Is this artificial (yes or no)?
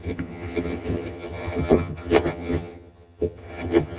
yes